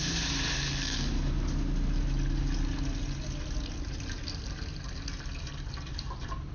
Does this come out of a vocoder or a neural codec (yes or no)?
no